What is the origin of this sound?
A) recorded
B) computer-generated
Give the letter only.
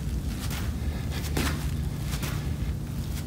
A